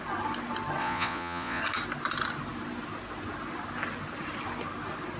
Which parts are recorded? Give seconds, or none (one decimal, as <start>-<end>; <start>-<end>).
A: 0.0-0.8; 1.6-5.2